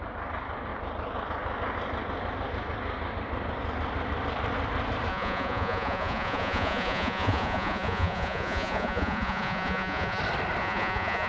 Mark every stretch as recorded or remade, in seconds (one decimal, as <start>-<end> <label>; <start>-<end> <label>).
0.0-5.1 recorded; 5.1-10.2 remade; 10.2-10.6 recorded; 10.6-11.3 remade